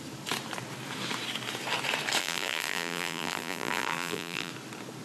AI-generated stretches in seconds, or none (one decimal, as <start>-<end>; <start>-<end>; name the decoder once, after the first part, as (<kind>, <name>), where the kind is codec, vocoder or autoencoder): 2.2-4.5 (vocoder, BigVGAN v2)